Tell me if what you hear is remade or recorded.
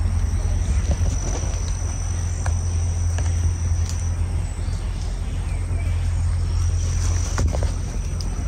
recorded